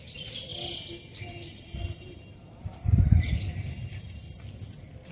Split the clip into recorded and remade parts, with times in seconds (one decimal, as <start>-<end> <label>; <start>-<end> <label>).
0.0-5.1 recorded